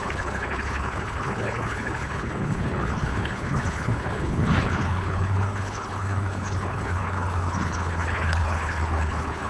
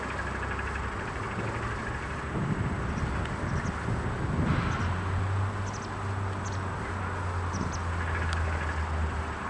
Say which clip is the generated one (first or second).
first